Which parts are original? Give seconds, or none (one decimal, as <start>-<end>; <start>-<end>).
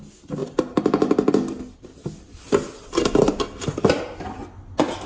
0.0-5.1